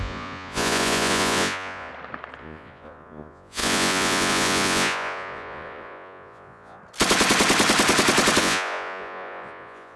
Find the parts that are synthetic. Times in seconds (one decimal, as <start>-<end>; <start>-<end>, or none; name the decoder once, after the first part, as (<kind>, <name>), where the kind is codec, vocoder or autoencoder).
0.0-1.9 (vocoder, Vocos); 2.4-6.8; 8.4-10.0